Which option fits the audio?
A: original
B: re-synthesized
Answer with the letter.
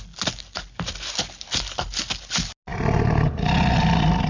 A